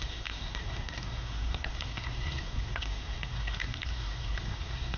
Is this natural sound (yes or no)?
no